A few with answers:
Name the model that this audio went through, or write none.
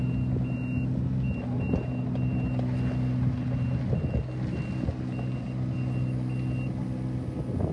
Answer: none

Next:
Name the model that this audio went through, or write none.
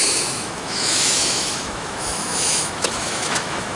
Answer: autoencoder, DAC-VAE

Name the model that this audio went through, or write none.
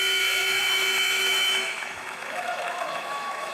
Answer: autoencoder, DAC-VAE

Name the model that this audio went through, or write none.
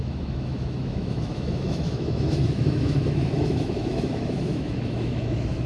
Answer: autoencoder, DAC-VAE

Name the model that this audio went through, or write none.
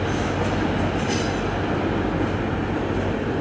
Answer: none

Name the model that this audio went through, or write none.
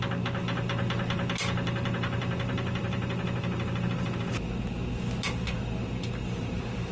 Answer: none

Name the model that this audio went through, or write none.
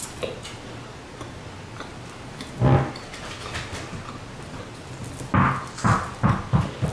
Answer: none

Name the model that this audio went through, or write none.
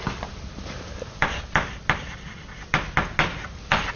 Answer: none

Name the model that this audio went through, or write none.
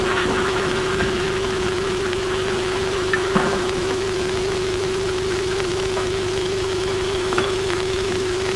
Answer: autoencoder, DAC-VAE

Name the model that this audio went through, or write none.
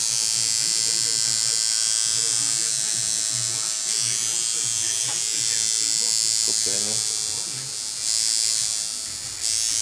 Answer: none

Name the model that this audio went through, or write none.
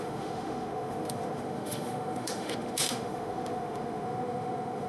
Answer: autoencoder, DAC-VAE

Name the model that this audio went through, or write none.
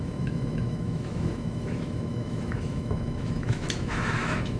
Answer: autoencoder, DAC-VAE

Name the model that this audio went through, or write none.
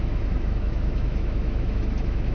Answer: autoencoder, DAC-VAE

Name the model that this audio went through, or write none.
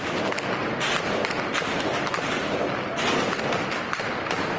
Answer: none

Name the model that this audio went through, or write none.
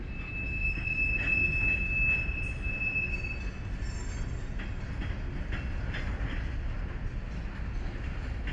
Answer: none